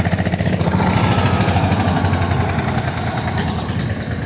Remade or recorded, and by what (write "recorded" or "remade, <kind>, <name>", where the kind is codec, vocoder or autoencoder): recorded